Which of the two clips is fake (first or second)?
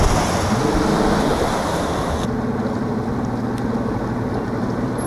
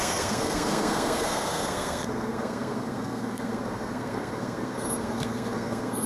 second